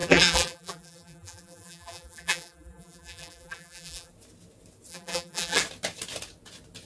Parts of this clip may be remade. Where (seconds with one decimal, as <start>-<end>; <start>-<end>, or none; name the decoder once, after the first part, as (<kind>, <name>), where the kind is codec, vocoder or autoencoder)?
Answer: 0.0-4.1 (vocoder, BigVGAN v2); 4.9-5.6